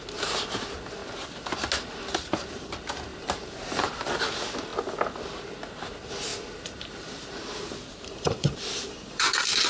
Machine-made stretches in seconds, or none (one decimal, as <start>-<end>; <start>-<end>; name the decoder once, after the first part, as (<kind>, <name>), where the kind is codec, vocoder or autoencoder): 3.1-4.2 (vocoder, BigVGAN v2); 6.3-9.7